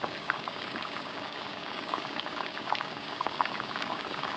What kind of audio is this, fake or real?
fake